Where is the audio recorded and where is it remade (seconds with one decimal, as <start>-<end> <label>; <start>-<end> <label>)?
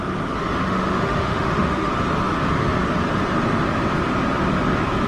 0.0-0.6 recorded; 0.6-1.9 remade; 1.9-5.1 recorded